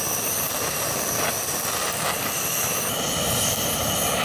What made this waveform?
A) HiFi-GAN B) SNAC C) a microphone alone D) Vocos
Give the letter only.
C